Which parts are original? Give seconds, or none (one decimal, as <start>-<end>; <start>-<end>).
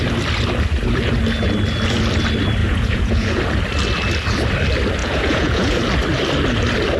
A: 0.0-2.6; 3.4-5.0; 5.8-7.0